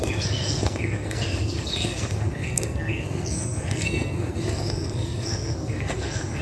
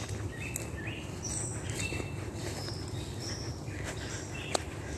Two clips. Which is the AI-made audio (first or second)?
first